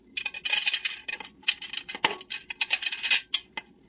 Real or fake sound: real